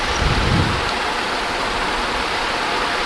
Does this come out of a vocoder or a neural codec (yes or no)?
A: no